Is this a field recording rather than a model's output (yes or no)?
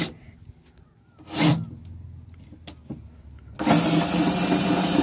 yes